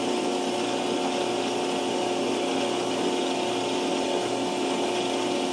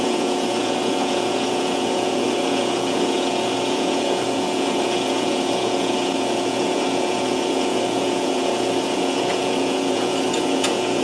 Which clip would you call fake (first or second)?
second